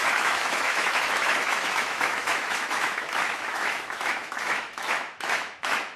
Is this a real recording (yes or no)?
no